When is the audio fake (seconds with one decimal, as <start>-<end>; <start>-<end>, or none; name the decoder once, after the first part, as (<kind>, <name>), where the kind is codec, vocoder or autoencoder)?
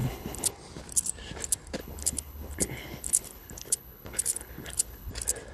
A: 0.0-0.5 (codec, HILCodec); 1.8-5.1